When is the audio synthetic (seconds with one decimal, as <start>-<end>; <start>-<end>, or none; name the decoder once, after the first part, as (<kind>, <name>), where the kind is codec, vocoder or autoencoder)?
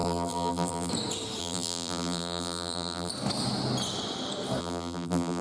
0.0-0.9 (vocoder, BigVGAN v2); 1.4-3.1; 4.6-5.4